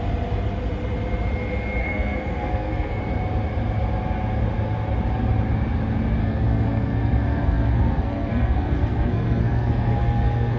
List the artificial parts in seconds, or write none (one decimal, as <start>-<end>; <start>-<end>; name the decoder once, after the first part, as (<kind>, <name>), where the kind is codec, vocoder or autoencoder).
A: 1.8-3.0 (codec, SNAC); 6.2-10.6